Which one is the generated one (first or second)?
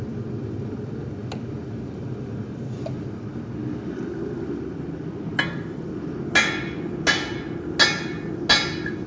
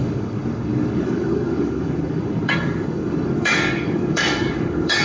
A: second